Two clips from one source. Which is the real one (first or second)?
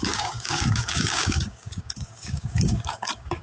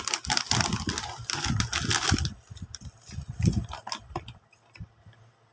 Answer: second